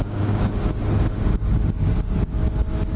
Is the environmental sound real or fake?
fake